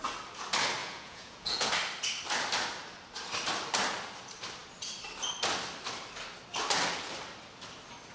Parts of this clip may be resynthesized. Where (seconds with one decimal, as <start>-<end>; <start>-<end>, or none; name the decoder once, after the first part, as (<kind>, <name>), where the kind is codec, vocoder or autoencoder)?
0.8-1.7 (vocoder, Vocos)